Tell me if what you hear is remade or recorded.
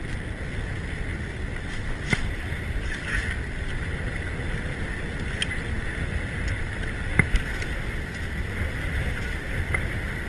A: recorded